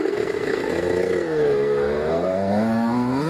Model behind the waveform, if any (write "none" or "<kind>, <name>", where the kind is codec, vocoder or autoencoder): codec, SNAC